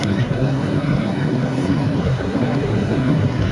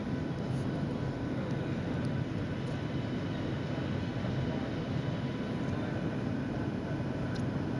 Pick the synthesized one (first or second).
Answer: first